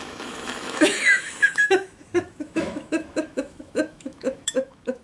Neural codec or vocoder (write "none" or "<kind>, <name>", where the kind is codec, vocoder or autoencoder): autoencoder, DAC-VAE